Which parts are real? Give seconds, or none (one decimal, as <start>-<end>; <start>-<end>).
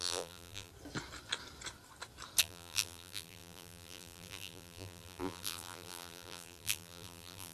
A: 0.7-2.4